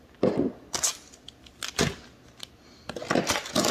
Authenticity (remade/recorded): recorded